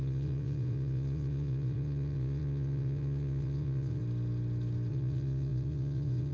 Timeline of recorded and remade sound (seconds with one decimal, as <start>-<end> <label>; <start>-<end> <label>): 0.0-4.0 remade; 4.0-4.9 recorded; 4.9-6.3 remade